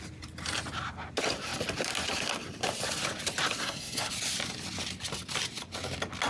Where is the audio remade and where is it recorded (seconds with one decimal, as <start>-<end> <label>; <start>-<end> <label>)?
0.0-3.6 recorded; 3.6-4.1 remade; 4.1-6.3 recorded